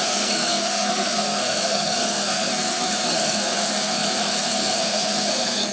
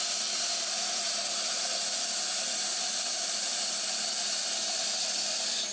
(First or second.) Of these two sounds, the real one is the second